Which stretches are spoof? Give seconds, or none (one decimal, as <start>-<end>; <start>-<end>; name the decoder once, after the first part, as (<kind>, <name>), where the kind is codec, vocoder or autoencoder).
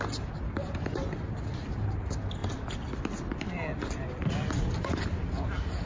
none